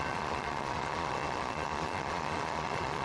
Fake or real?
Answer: fake